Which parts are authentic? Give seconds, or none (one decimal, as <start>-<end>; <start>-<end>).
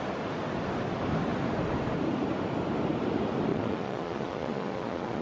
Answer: 0.0-3.5